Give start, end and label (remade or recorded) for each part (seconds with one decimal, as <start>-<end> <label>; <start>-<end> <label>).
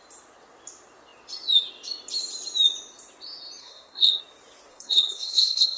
0.0-3.6 recorded; 3.6-4.2 remade; 4.2-4.7 recorded; 4.7-5.8 remade